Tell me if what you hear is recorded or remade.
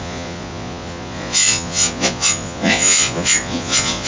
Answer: remade